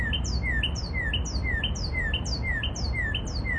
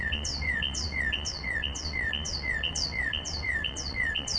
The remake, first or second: second